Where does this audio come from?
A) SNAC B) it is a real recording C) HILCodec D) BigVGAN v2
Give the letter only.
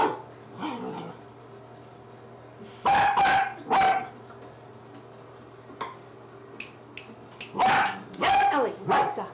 B